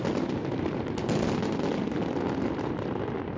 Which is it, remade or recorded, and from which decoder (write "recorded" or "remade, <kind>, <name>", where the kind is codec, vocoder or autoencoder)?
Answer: recorded